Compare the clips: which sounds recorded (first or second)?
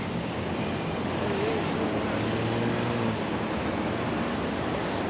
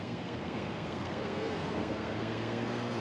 first